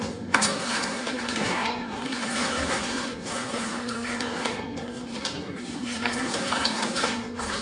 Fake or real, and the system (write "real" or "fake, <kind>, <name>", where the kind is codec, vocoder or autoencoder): fake, codec, SNAC